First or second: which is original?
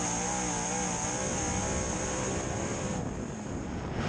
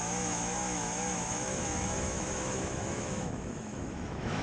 first